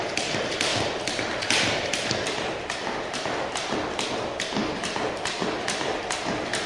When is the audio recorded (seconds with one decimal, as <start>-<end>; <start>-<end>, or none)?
4.6-5.1